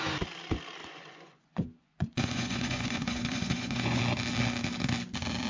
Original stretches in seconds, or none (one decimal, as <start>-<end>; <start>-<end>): 0.0-0.8; 4.0-5.5